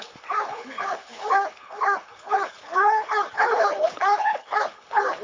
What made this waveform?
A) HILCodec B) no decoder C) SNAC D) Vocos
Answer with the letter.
A